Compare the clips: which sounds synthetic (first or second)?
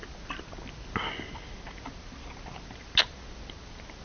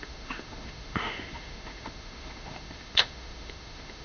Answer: second